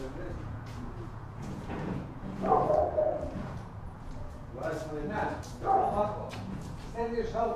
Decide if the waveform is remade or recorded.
remade